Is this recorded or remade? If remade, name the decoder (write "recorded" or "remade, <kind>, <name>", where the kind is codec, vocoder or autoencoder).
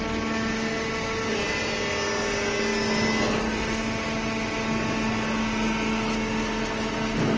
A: recorded